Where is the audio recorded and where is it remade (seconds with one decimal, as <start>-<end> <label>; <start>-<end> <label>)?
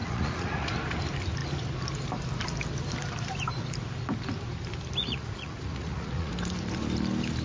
0.0-0.7 remade; 0.7-5.0 recorded; 5.0-6.3 remade; 6.3-7.4 recorded